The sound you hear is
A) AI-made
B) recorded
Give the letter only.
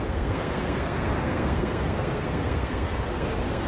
A